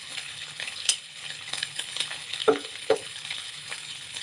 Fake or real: fake